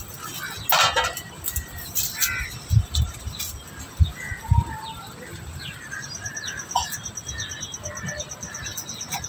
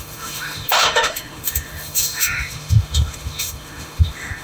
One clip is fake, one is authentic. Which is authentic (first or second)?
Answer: first